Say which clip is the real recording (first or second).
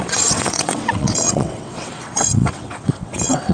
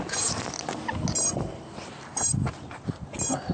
second